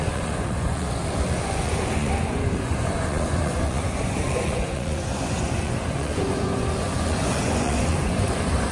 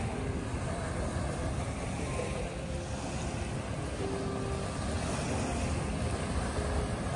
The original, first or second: second